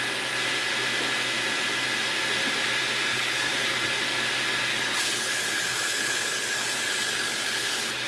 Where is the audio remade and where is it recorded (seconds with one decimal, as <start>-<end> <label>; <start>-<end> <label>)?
0.0-3.1 recorded; 3.1-3.7 remade; 3.7-4.7 recorded; 4.7-8.1 remade